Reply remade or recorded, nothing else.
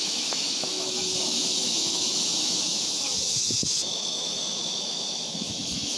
remade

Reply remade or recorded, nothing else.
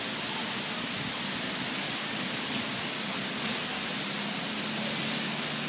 recorded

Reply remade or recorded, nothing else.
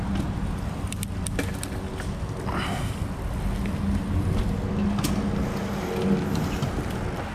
recorded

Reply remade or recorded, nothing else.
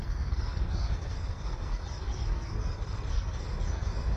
remade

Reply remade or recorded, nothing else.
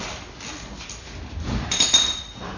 recorded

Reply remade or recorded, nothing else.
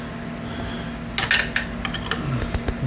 recorded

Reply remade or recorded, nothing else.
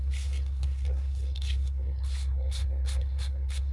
remade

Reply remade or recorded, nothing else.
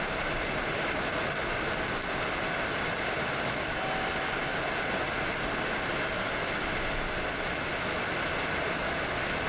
recorded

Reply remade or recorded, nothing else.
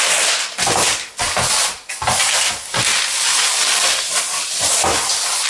recorded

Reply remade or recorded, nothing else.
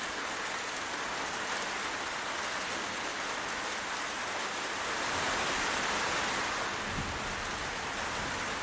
recorded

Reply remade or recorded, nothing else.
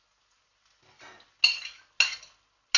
recorded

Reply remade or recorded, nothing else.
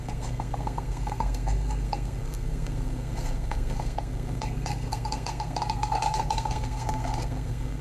remade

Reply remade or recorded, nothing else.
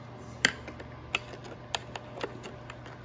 recorded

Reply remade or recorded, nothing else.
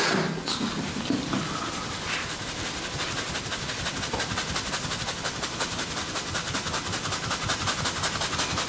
recorded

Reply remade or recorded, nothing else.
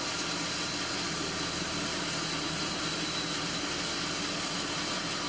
recorded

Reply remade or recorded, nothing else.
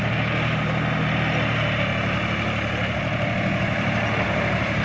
recorded